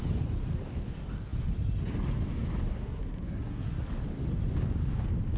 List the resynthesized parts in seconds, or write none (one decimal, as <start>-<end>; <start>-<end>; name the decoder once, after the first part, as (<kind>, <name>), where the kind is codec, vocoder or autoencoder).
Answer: 2.7-3.7 (codec, SNAC)